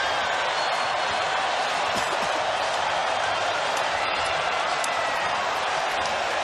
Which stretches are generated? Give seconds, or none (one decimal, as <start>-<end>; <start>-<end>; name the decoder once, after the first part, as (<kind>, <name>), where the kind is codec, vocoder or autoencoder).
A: 3.0-5.7 (vocoder, BigVGAN v2)